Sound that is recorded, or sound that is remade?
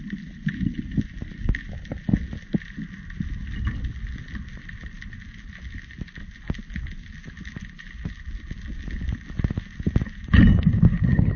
recorded